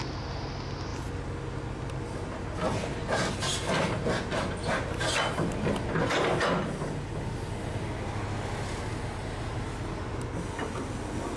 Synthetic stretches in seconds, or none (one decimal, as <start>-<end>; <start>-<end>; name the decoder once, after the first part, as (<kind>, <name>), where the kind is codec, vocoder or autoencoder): none

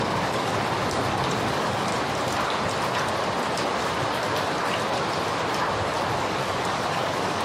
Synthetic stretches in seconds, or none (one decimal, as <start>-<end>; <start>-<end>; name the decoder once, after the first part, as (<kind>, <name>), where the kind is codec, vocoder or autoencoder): 0.0-0.5 (codec, DAC); 1.4-1.9; 6.2-7.4

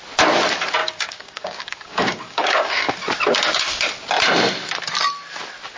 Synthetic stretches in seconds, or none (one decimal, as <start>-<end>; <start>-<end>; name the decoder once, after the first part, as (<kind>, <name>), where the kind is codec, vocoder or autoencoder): 0.8-2.9 (codec, DAC)